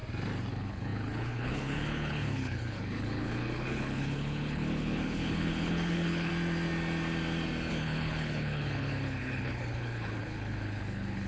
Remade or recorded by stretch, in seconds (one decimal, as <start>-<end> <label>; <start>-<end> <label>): 0.0-0.5 recorded; 0.5-6.3 remade; 6.3-7.7 recorded; 7.7-11.3 remade

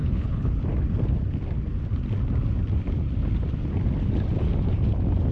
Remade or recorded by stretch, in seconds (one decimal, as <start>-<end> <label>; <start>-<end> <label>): 0.0-0.5 remade; 0.5-5.3 recorded

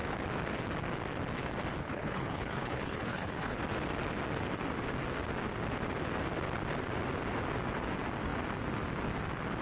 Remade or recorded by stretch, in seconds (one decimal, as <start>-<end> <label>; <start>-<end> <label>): 0.0-1.8 recorded; 1.8-3.6 remade; 3.6-9.6 recorded